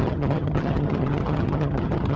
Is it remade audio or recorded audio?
remade